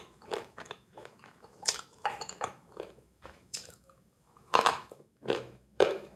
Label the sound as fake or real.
fake